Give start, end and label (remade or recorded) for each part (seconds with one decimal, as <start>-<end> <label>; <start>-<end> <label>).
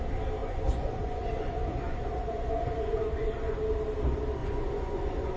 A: 0.0-0.4 recorded; 0.4-3.6 remade; 3.6-4.4 recorded; 4.4-5.4 remade